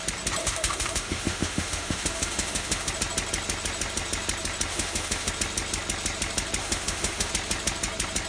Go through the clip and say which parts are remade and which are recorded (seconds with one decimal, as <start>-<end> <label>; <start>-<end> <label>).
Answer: 0.0-0.4 recorded; 0.4-2.9 remade; 2.9-4.7 recorded; 4.7-5.3 remade; 5.3-6.6 recorded; 6.6-7.3 remade; 7.3-8.3 recorded